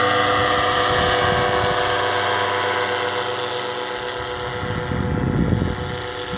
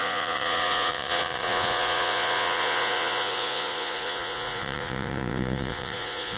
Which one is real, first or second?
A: first